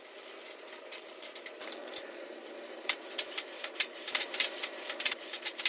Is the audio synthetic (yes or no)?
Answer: yes